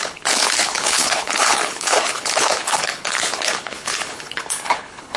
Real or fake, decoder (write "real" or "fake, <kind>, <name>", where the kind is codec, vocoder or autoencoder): fake, codec, HILCodec